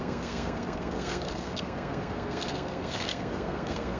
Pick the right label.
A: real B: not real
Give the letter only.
B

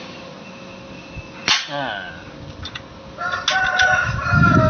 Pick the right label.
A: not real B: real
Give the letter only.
B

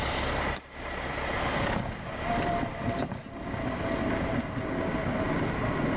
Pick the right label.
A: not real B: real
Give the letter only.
B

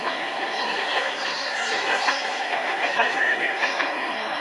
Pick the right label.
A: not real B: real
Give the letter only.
A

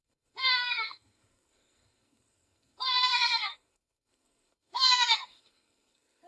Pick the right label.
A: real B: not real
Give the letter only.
B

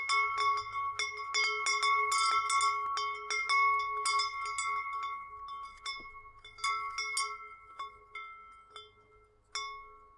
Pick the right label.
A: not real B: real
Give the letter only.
B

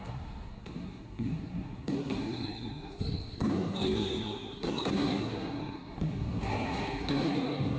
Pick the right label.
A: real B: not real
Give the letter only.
B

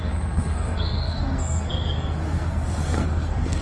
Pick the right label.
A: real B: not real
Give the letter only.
B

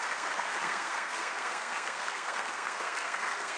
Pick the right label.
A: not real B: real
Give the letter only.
A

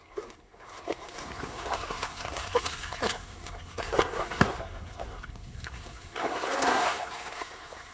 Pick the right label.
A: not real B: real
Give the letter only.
A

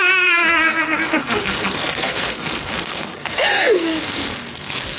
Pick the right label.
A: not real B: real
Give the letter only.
A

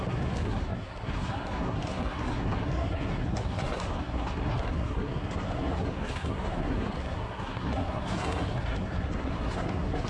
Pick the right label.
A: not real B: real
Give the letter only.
A